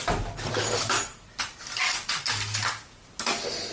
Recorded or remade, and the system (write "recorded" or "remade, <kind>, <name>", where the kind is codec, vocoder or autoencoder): recorded